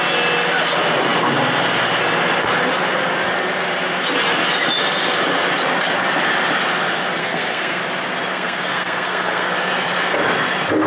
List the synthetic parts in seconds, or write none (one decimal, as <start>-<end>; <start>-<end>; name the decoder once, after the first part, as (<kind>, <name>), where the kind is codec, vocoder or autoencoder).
7.2-7.8 (codec, SNAC); 8.3-9.5